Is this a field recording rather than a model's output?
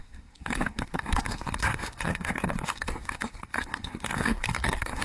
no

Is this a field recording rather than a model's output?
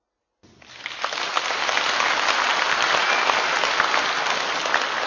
yes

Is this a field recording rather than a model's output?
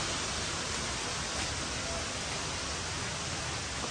yes